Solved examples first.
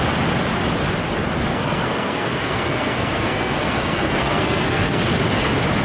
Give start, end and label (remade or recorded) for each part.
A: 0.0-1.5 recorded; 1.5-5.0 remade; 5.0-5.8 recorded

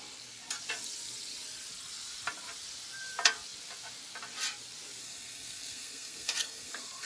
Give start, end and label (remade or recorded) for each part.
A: 0.0-5.0 recorded; 5.0-7.1 remade

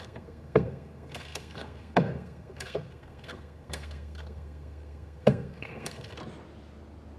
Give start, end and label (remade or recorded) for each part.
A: 0.0-6.2 remade; 6.2-7.2 recorded

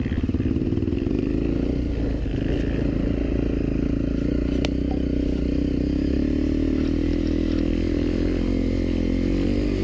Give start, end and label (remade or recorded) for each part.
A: 0.0-9.8 recorded

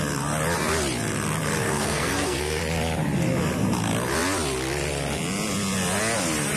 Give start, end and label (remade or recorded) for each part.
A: 0.0-1.6 recorded; 1.6-2.6 remade; 2.6-6.6 recorded